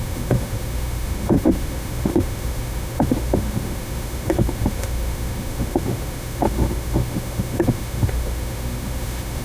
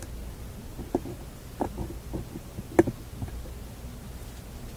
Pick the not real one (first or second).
first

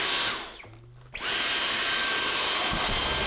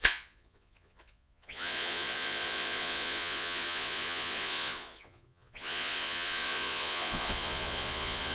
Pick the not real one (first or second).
second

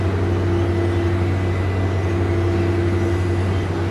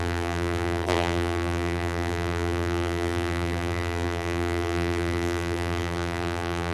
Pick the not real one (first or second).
second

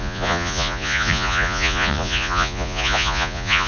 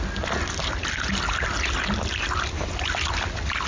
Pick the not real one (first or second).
first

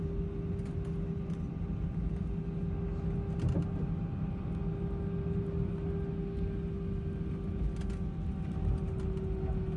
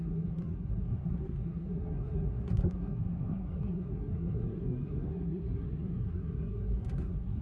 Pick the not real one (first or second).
second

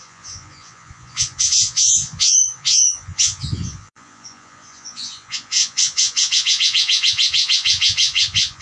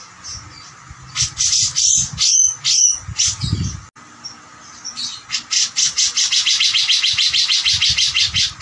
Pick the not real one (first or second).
first